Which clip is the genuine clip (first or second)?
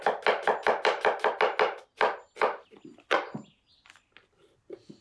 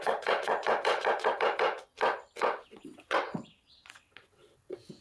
first